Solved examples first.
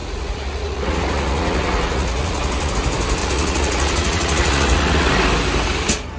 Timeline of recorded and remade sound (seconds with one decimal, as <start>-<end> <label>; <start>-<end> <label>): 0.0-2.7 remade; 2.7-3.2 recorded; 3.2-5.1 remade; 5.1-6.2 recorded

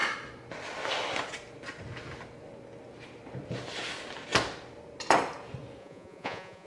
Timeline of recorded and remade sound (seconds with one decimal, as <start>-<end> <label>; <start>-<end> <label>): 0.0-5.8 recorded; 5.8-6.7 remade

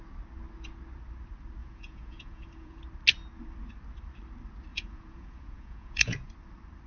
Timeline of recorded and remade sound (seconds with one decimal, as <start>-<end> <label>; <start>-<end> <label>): 0.0-1.6 recorded; 1.6-2.8 remade; 2.8-4.7 recorded; 4.7-6.3 remade; 6.3-6.9 recorded

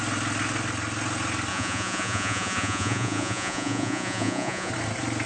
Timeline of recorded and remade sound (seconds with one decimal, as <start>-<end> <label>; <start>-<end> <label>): 0.0-1.5 recorded; 1.5-4.7 remade; 4.7-5.3 recorded